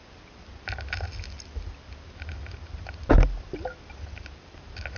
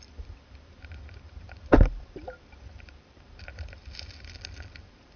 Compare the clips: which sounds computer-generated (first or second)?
second